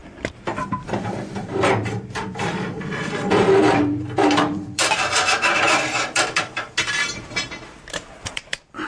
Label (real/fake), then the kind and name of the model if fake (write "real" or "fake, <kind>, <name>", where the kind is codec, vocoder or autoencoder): fake, vocoder, BigVGAN v2